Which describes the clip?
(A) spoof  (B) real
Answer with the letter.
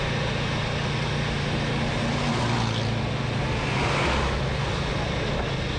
B